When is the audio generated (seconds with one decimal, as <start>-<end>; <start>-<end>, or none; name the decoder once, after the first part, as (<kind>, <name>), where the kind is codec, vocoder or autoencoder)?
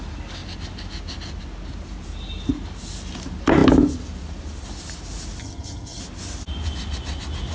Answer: 5.4-6.0 (vocoder, HiFi-GAN)